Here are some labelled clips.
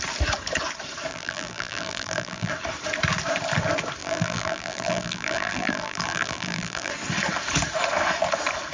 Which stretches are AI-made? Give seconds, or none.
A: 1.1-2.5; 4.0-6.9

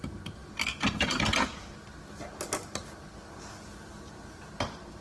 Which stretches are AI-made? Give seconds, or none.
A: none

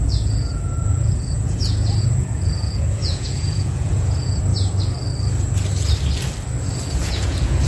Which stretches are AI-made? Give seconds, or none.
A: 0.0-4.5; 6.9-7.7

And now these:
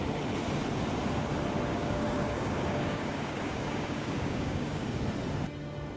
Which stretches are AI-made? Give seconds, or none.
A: 1.7-5.0